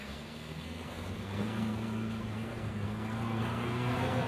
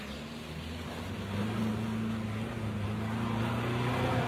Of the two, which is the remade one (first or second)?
first